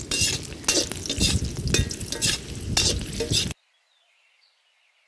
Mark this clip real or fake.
real